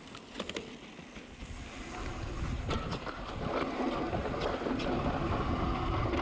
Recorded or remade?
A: recorded